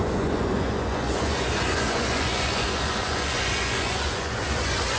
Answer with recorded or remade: remade